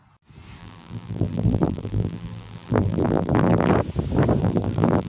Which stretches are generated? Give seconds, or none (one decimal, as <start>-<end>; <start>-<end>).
0.6-3.7; 4.4-5.1